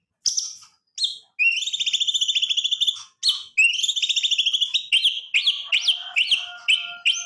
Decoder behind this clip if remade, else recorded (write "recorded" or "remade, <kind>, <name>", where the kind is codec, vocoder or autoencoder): recorded